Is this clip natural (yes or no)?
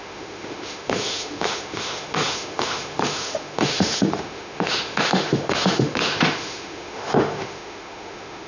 no